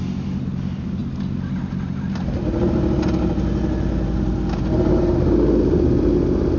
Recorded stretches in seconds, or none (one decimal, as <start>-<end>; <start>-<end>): 0.0-6.6